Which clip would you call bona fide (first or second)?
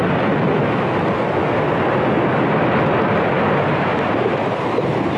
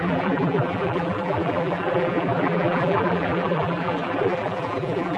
first